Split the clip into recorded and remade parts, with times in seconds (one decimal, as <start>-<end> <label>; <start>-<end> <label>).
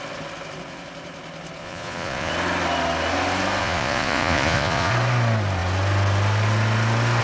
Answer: 0.0-1.6 recorded; 1.6-2.3 remade; 2.3-3.6 recorded; 3.6-4.9 remade; 4.9-7.2 recorded